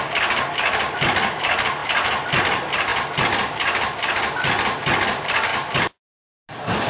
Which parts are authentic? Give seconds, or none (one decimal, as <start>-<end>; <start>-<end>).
0.0-6.9

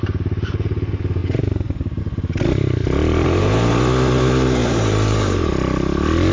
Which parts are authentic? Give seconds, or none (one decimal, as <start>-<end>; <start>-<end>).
0.0-1.2; 2.0-2.8; 3.8-4.6; 5.5-6.3

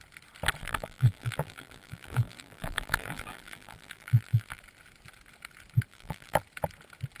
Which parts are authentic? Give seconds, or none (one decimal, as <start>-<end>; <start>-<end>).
0.0-0.6; 4.6-5.9; 6.4-7.2

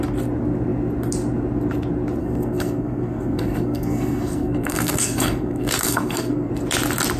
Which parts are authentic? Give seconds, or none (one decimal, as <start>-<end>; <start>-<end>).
0.0-2.2; 6.5-7.2

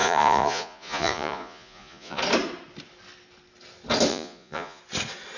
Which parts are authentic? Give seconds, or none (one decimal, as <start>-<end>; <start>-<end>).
2.2-4.1; 4.8-5.4